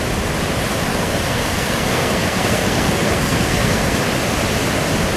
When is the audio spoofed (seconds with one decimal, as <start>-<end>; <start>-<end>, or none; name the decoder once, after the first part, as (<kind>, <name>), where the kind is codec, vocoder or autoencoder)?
0.9-4.0 (codec, SNAC)